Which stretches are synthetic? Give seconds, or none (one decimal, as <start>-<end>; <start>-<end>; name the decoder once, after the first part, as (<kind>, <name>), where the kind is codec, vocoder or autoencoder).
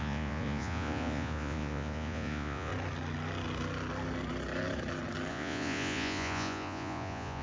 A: 0.0-2.7 (vocoder, Vocos); 5.3-7.4